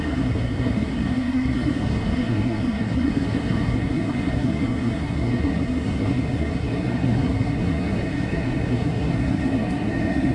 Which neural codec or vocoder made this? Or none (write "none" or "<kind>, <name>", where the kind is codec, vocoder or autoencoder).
codec, SNAC